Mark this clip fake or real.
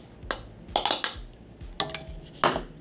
real